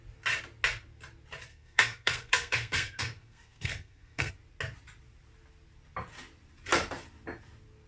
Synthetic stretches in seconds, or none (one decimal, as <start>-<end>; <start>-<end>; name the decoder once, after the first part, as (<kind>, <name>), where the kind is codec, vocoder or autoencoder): 1.5-4.3 (codec, SNAC)